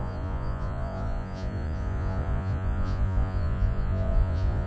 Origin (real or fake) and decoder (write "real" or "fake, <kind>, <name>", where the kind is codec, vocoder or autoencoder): fake, vocoder, Vocos